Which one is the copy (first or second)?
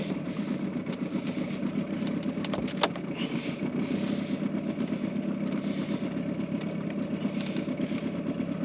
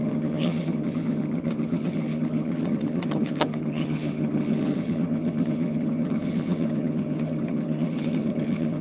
second